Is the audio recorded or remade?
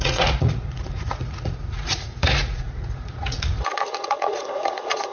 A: remade